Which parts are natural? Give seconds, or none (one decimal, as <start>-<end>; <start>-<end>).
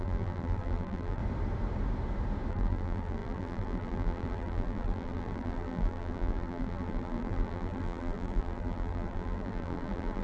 1.2-2.5